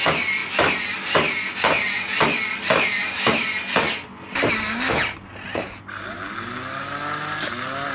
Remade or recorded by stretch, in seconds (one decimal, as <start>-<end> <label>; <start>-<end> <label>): 0.0-7.9 recorded